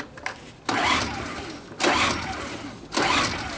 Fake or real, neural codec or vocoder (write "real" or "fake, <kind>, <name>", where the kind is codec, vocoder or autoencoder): real